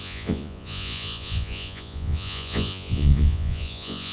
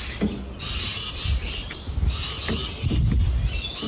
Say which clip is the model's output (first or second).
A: first